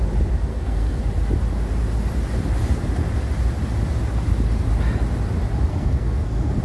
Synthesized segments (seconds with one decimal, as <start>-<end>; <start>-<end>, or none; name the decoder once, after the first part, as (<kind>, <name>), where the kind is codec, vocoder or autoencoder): 0.5-1.0 (codec, SNAC); 5.7-6.6